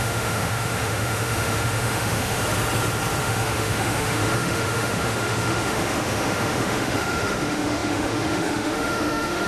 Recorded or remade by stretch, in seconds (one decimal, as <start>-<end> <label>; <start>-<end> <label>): 0.0-2.4 remade; 2.4-3.2 recorded; 3.2-9.5 remade